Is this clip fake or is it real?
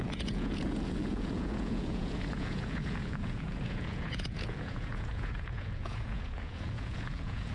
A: fake